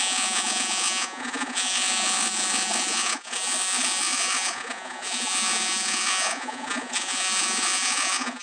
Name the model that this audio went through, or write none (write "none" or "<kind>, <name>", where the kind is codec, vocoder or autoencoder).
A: vocoder, Vocos